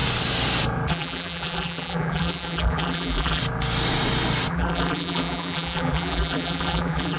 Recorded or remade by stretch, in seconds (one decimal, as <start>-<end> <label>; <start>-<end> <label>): 0.0-0.9 recorded; 0.9-3.4 remade; 3.4-4.5 recorded; 4.5-7.2 remade